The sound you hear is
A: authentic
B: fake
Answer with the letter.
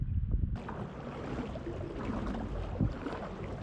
A